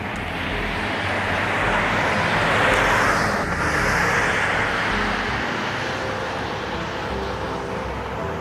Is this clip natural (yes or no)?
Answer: yes